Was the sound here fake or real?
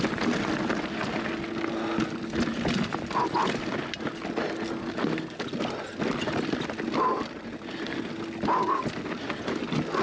real